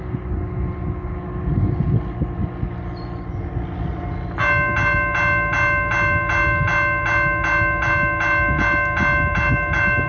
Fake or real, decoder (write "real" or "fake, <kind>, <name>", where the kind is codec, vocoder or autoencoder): real